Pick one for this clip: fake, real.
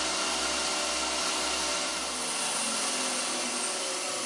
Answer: real